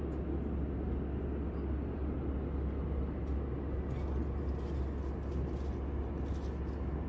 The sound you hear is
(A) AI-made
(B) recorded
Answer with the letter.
B